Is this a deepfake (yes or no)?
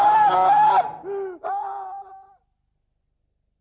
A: no